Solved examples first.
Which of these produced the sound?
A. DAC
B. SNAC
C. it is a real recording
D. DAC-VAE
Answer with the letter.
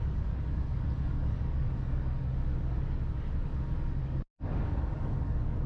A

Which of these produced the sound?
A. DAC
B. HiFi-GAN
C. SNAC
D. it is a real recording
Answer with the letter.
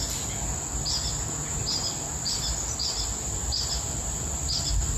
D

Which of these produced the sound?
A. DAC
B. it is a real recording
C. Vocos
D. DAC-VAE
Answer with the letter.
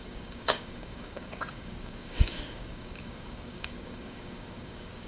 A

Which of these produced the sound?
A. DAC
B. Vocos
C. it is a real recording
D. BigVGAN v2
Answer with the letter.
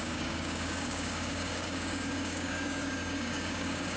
A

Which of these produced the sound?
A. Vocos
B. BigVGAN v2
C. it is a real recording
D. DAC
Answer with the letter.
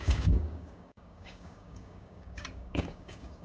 D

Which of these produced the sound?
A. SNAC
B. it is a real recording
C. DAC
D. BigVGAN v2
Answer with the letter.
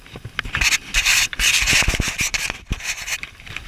B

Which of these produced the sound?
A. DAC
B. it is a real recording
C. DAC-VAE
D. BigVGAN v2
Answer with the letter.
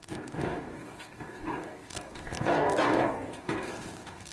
A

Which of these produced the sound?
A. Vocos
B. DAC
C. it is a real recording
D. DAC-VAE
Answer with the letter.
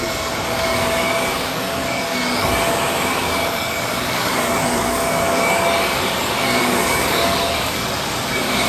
B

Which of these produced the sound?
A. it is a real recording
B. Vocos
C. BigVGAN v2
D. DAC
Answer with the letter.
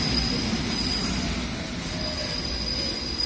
A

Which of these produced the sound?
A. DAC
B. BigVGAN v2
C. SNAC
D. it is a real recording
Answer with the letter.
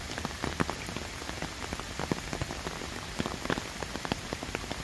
D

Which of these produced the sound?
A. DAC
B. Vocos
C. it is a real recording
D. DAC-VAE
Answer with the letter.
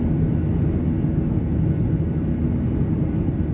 C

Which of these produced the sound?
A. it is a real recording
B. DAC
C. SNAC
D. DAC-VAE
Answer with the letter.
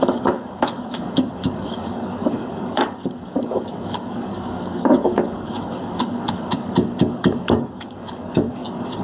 B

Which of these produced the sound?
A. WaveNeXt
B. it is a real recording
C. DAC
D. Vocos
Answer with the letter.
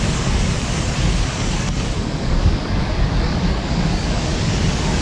C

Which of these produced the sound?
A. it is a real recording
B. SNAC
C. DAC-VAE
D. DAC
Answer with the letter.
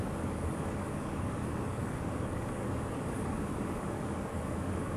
D